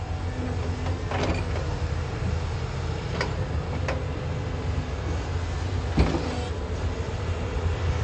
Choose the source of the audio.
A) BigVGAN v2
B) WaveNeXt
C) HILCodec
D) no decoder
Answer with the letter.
D